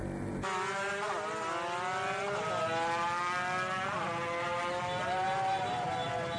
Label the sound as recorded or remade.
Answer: recorded